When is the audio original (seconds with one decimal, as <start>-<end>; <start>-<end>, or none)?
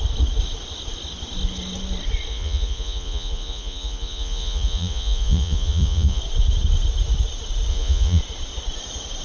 0.0-2.3; 6.2-7.7; 8.2-9.2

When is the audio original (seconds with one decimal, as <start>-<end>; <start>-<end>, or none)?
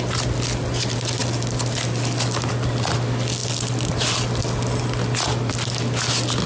0.0-6.5